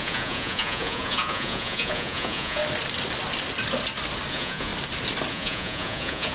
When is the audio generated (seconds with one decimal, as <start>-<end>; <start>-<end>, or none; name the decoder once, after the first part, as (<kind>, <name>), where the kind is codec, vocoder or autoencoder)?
0.0-2.6 (vocoder, Vocos); 4.3-4.7; 5.3-6.3